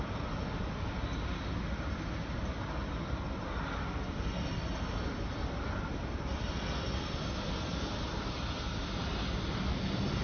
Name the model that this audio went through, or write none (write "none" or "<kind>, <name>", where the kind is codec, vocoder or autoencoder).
none